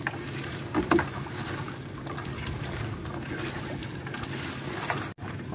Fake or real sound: real